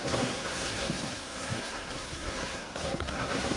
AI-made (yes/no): yes